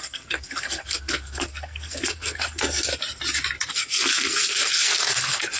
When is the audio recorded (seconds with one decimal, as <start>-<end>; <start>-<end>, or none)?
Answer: 2.9-3.7